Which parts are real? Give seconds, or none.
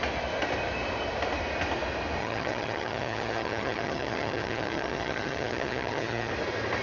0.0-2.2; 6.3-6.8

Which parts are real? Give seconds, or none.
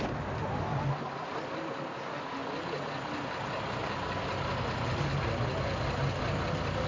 0.0-6.9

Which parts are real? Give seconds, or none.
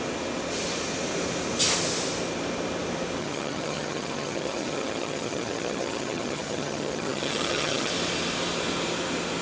0.0-3.2; 7.9-9.4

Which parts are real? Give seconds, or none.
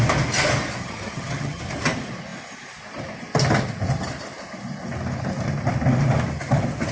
0.0-0.8; 1.6-6.9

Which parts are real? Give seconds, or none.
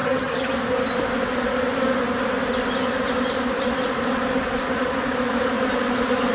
0.5-6.3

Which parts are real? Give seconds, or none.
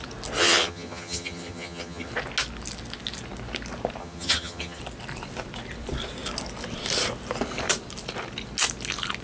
0.0-0.4; 2.1-4.0; 4.8-9.2